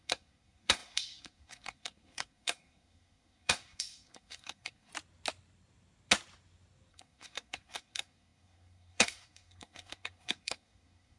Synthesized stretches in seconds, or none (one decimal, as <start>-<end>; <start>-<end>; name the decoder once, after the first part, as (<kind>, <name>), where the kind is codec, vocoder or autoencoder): 0.0-4.9 (codec, SNAC); 6.9-11.2